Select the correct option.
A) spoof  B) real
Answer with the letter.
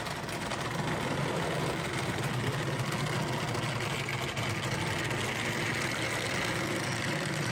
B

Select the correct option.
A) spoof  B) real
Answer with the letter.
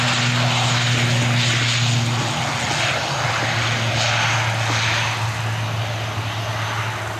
B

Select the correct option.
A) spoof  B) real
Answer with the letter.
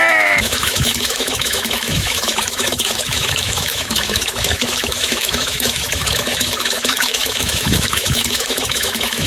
A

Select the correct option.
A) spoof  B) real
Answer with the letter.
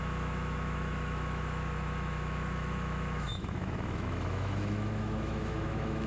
A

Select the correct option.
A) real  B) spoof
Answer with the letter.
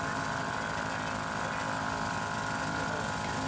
A